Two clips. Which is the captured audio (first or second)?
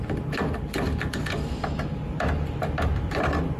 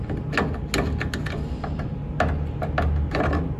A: second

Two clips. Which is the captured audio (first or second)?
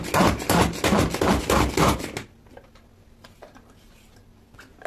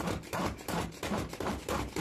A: first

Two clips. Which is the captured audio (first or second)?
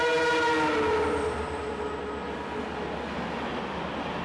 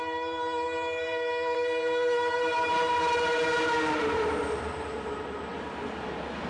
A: first